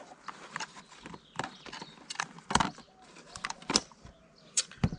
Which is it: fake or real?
fake